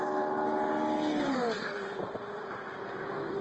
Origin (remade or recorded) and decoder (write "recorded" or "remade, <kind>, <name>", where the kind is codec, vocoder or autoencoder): recorded